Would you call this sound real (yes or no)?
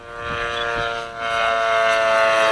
yes